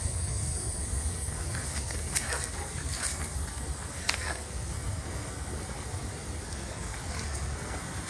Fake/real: fake